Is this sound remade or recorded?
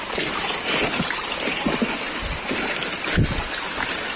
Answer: recorded